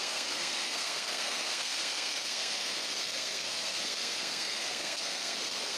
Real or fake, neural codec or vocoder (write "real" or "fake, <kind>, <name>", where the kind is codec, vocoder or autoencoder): fake, codec, SNAC